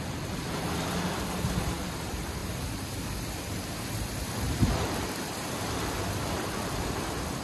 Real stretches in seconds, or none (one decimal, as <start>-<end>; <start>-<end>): none